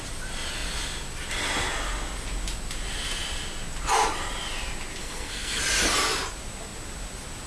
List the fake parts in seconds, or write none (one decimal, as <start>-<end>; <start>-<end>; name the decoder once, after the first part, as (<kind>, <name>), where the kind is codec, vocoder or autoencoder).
5.0-5.6 (codec, SNAC)